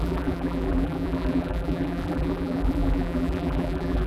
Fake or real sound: fake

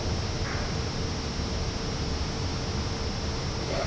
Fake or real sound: real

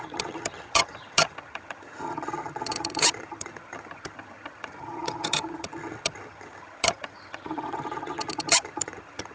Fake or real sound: fake